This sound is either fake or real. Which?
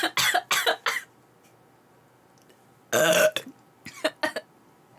real